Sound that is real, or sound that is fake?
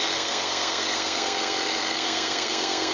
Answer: fake